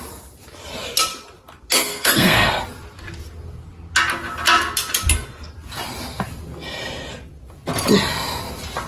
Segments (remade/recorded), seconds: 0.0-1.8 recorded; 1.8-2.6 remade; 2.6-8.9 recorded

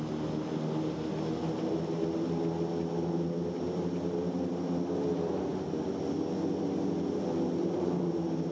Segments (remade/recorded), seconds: 0.0-7.6 recorded; 7.6-8.1 remade; 8.1-8.5 recorded

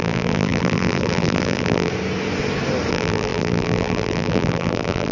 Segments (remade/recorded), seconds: 0.0-1.9 remade; 1.9-2.9 recorded; 2.9-5.1 remade

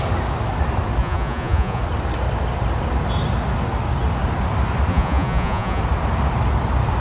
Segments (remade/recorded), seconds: 0.0-1.0 recorded; 1.0-1.8 remade; 1.8-4.9 recorded; 4.9-5.8 remade; 5.8-7.0 recorded

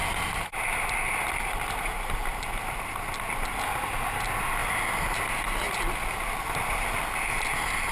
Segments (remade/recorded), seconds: 0.0-7.9 recorded

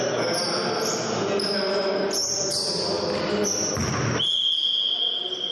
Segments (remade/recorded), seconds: 0.0-5.5 recorded

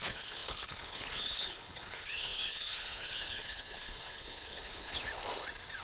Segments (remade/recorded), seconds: 0.0-5.1 remade; 5.1-5.8 recorded